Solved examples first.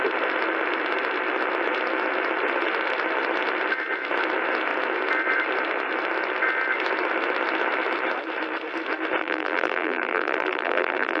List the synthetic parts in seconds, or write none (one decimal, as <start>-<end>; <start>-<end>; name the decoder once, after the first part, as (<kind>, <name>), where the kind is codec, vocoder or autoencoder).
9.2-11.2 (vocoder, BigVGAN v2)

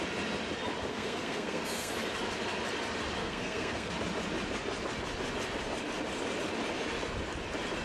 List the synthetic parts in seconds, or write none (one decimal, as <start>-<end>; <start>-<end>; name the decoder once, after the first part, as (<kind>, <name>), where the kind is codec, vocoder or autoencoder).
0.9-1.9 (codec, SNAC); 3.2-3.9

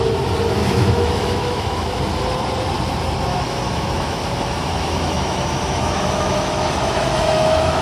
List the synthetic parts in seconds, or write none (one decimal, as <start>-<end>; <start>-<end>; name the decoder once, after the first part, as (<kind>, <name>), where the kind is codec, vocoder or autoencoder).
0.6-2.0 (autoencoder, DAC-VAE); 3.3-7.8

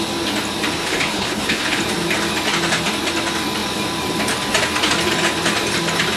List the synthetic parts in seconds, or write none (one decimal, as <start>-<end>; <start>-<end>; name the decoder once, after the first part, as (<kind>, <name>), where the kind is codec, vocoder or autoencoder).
0.8-1.8 (codec, HILCodec)

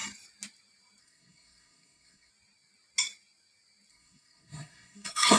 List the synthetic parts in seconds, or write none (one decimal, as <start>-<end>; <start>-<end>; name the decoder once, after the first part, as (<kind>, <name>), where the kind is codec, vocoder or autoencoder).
1.0-2.3 (codec, SNAC); 3.9-5.4

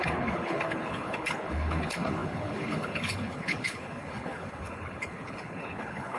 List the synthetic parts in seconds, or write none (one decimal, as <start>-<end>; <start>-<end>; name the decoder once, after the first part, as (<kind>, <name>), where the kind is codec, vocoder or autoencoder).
0.0-6.2 (codec, HILCodec)

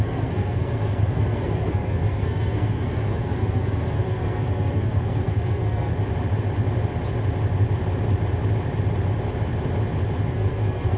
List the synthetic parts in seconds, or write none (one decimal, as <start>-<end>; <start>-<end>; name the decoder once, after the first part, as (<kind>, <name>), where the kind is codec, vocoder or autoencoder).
0.0-5.9 (codec, SNAC); 10.3-11.0